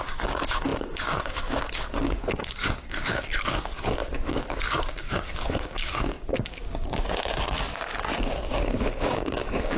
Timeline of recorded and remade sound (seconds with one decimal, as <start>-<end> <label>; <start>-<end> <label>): 0.0-9.8 remade